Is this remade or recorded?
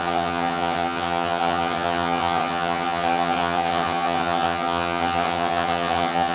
remade